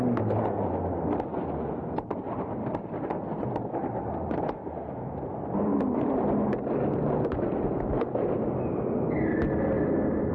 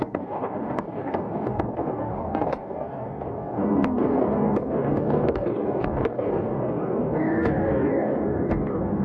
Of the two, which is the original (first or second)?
first